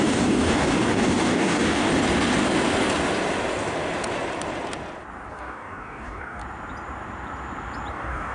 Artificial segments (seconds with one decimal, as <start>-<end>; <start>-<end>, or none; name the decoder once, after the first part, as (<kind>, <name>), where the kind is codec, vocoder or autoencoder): 0.0-1.9 (codec, DAC); 5.3-6.4; 7.9-8.3